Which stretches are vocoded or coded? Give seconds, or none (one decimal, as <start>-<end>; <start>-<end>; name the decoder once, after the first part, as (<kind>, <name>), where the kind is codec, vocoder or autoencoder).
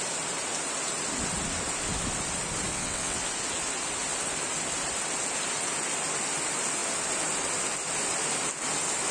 2.7-3.2 (vocoder, WaveNeXt)